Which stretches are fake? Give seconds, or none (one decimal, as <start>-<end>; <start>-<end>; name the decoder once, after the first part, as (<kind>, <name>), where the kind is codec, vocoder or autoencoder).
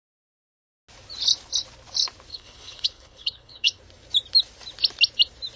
2.3-3.8 (codec, HILCodec)